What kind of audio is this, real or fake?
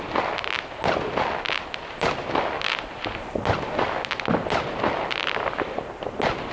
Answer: real